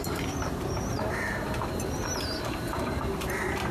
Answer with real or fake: fake